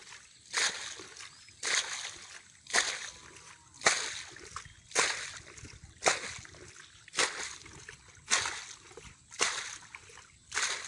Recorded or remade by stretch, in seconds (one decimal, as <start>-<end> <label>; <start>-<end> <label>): 0.0-10.9 recorded